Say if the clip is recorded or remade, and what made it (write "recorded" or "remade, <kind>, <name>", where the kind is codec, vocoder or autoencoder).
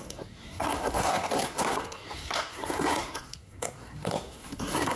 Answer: remade, codec, SNAC